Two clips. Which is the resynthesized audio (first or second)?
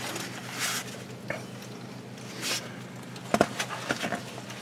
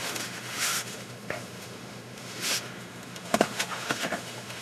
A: second